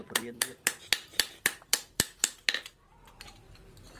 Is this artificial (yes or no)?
yes